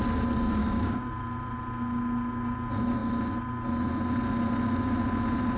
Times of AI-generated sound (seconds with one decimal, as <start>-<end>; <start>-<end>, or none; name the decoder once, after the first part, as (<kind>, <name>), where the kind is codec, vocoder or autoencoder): 0.6-1.1 (codec, DAC)